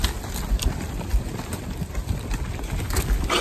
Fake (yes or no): no